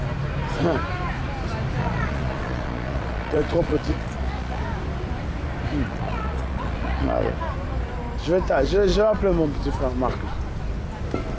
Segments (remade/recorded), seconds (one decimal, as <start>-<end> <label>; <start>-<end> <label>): 0.0-1.8 recorded; 1.8-4.6 remade; 4.6-5.9 recorded; 5.9-7.4 remade; 7.4-11.4 recorded